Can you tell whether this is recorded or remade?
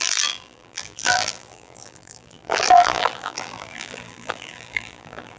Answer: remade